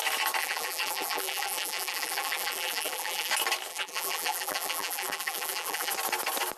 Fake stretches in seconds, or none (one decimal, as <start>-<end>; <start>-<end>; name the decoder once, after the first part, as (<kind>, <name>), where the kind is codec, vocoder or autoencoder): 0.4-3.3 (vocoder, BigVGAN v2); 3.7-5.9